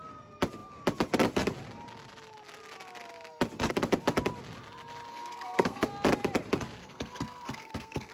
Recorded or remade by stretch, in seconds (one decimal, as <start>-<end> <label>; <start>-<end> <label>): 0.0-5.1 recorded; 5.1-5.9 remade; 5.9-6.8 recorded; 6.8-8.1 remade